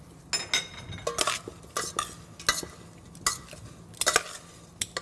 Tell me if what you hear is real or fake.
real